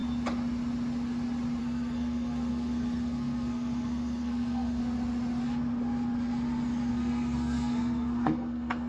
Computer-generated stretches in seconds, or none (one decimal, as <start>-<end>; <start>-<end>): 1.6-4.8; 6.9-8.9